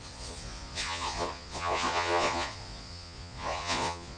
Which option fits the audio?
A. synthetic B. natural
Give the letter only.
A